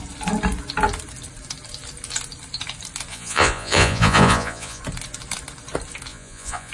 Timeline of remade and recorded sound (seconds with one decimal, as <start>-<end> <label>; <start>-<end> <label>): 0.0-3.1 recorded; 3.1-4.8 remade; 4.8-6.1 recorded; 6.1-6.7 remade